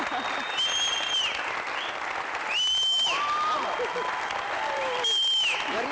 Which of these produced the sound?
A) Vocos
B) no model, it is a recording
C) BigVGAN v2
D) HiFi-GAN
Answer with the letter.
B